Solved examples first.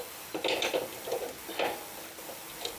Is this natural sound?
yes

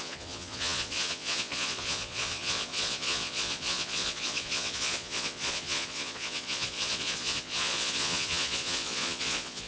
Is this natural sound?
no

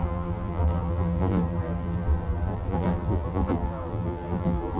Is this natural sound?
no